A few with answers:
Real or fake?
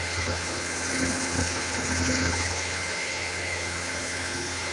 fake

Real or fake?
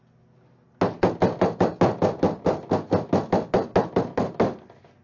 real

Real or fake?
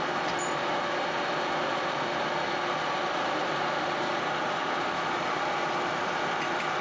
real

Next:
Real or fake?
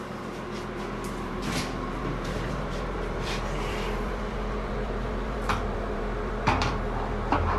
fake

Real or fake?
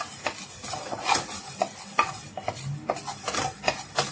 real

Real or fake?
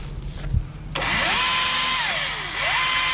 real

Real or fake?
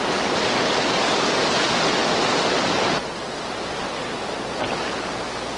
real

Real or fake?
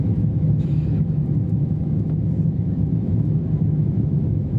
fake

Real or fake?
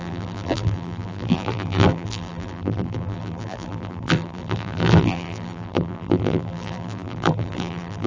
fake